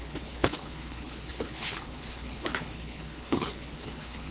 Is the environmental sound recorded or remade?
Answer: remade